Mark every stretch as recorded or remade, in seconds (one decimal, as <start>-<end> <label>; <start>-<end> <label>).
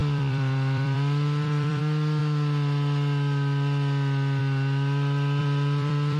0.0-1.8 remade; 1.8-5.4 recorded; 5.4-6.2 remade